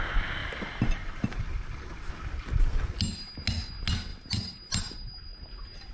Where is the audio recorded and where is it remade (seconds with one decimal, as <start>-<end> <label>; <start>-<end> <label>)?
0.0-0.4 recorded; 0.4-2.1 remade; 2.1-4.1 recorded; 4.1-5.9 remade